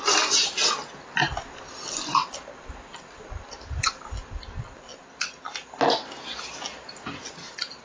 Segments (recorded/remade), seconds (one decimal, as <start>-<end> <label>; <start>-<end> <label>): 0.0-7.8 recorded